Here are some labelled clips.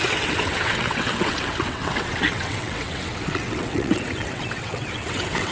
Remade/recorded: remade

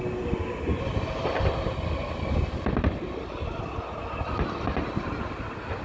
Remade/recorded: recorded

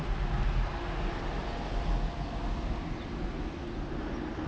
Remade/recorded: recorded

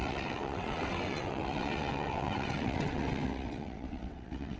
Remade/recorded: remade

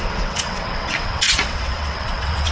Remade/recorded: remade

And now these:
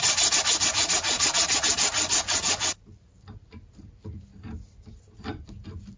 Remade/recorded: recorded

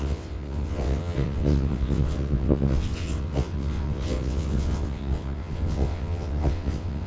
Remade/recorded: remade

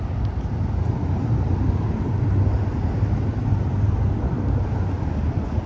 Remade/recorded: recorded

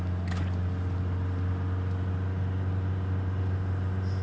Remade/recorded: recorded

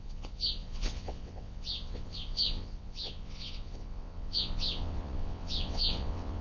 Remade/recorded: remade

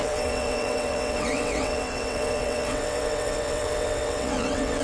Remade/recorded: remade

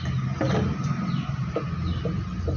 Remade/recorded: recorded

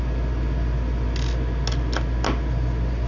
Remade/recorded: recorded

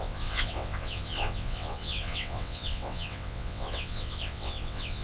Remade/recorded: remade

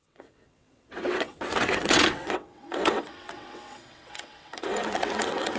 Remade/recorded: remade